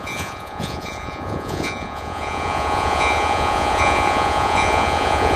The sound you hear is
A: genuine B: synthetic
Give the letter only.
B